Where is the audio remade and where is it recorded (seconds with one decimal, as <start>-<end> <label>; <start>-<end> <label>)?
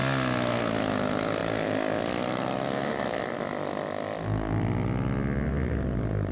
0.0-6.3 recorded